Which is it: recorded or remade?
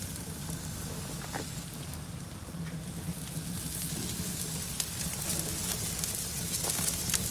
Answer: recorded